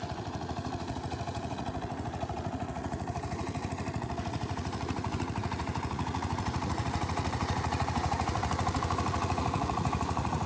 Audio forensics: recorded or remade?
remade